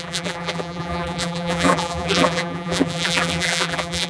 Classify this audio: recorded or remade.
remade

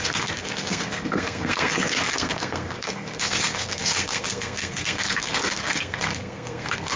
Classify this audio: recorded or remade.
remade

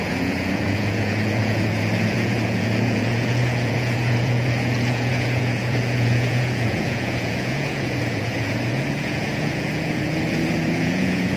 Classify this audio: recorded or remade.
remade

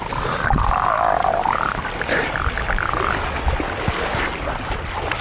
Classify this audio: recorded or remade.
recorded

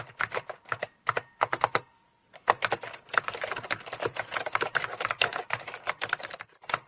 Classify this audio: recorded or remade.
recorded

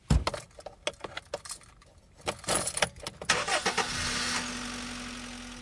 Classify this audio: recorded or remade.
recorded